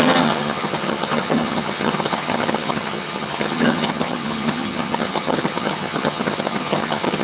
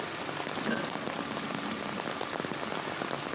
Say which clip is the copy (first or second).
first